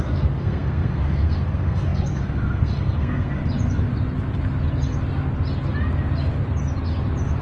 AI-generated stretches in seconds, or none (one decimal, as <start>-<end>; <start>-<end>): 0.0-3.4